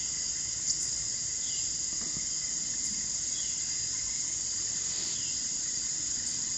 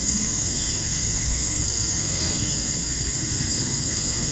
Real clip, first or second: first